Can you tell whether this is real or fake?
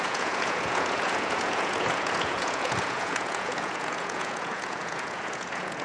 fake